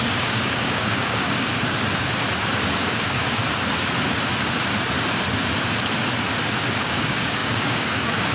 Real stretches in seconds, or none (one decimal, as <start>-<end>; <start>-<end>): 1.5-2.8; 3.4-6.8